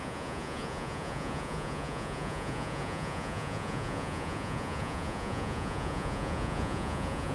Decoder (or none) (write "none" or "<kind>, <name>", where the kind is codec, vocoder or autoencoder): vocoder, Vocos